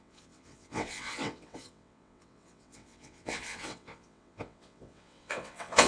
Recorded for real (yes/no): no